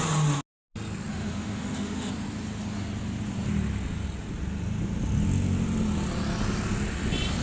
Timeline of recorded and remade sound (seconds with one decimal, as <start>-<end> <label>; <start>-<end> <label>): 0.0-1.1 recorded; 1.1-2.1 remade; 2.1-7.4 recorded